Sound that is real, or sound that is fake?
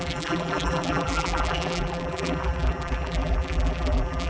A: fake